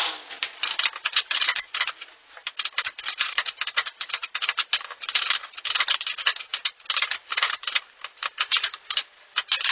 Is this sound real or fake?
real